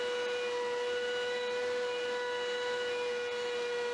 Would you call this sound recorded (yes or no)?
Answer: yes